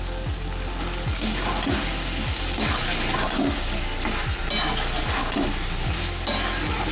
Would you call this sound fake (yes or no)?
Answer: no